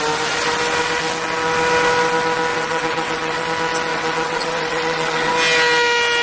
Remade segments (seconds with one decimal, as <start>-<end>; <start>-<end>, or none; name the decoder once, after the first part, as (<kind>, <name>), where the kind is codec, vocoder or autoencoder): 2.5-3.4 (vocoder, WaveNeXt); 3.9-5.3